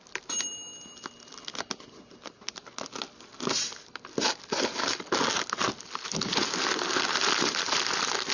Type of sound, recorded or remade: recorded